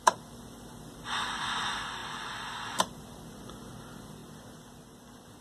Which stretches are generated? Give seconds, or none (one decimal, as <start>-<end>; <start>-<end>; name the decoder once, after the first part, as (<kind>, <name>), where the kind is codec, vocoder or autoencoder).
0.0-2.0 (vocoder, BigVGAN v2); 3.0-4.2